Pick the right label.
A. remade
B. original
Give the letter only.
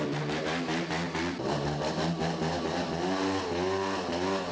B